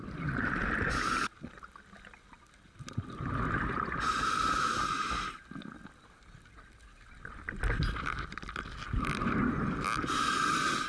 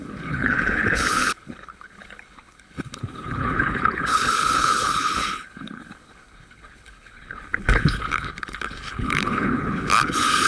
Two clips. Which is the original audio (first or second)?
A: first